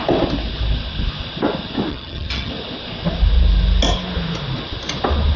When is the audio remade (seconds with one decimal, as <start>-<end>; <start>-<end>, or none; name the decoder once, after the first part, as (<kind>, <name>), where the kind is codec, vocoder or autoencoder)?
1.9-2.5 (vocoder, HiFi-GAN)